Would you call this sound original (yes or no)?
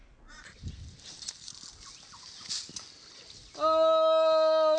yes